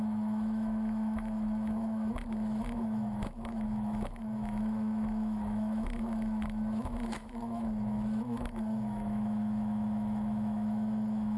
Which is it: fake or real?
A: fake